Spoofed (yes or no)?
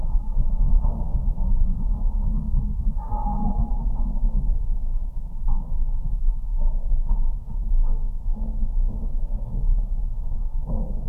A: yes